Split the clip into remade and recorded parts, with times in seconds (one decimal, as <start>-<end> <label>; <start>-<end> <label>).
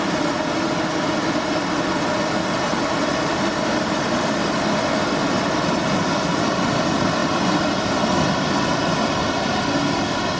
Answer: 0.0-2.7 recorded; 2.7-4.9 remade; 4.9-7.2 recorded; 7.2-7.7 remade; 7.7-10.4 recorded